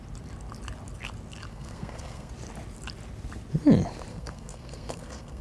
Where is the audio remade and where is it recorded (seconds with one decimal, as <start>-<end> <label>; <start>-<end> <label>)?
0.0-1.5 recorded; 1.5-2.3 remade; 2.3-4.1 recorded; 4.1-5.4 remade